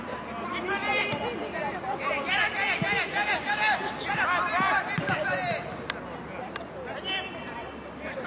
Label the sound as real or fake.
real